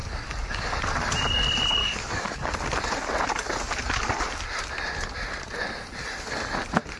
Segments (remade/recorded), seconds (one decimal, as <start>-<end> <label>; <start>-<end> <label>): 0.0-0.8 remade; 0.8-1.8 recorded; 1.8-2.5 remade; 2.5-7.0 recorded